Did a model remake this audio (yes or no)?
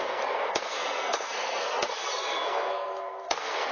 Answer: yes